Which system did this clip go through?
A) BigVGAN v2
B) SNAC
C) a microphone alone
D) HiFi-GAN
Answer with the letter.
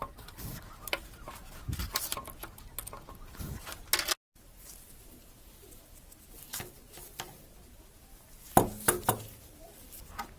C